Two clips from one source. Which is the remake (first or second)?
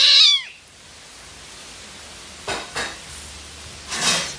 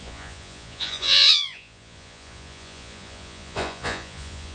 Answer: second